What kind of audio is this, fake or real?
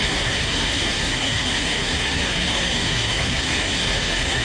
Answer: fake